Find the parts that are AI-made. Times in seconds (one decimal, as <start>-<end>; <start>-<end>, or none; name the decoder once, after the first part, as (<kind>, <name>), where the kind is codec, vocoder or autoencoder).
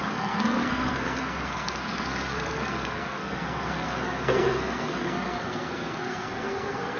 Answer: 0.0-7.0 (codec, SNAC)